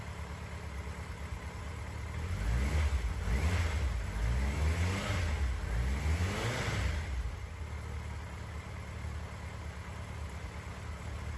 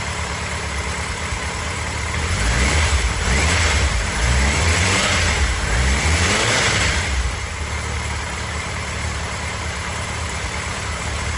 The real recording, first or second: first